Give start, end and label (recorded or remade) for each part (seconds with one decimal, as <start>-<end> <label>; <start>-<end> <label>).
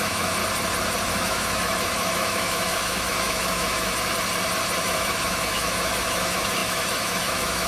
0.0-0.4 remade; 0.4-1.1 recorded; 1.1-3.9 remade; 3.9-4.8 recorded; 4.8-7.7 remade